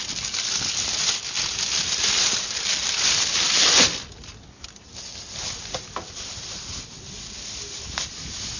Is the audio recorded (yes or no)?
yes